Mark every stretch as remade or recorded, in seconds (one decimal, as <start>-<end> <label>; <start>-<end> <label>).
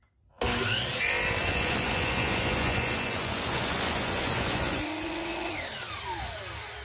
0.0-1.4 recorded; 1.4-5.5 remade; 5.5-6.8 recorded